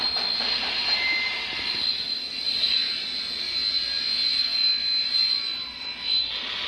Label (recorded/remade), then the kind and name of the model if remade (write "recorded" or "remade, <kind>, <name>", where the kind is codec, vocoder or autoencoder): recorded